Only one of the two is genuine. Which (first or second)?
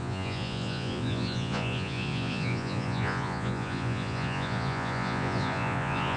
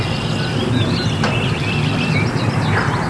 second